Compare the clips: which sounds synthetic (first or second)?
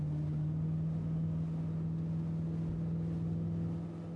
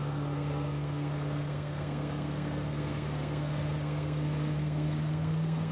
second